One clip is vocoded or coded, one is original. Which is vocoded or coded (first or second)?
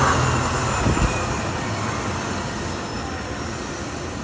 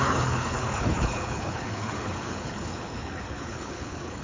second